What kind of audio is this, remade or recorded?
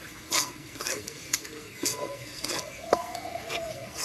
remade